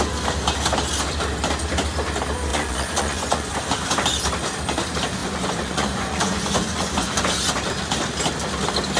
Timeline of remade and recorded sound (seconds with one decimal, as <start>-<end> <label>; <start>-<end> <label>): 0.0-2.5 recorded; 2.5-3.6 remade; 3.6-5.2 recorded; 5.2-7.3 remade; 7.3-9.0 recorded